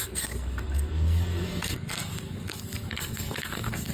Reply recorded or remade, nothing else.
remade